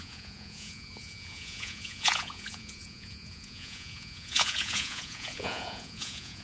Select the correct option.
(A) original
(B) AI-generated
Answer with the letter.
B